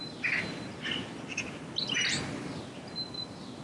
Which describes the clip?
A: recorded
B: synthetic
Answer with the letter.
A